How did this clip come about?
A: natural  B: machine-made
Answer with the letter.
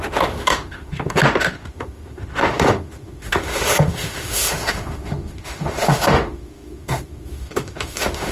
B